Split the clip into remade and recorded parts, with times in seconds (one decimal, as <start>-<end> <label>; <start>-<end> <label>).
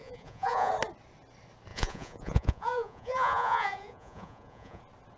0.0-0.7 remade; 0.7-1.7 recorded; 1.7-4.8 remade; 4.8-5.2 recorded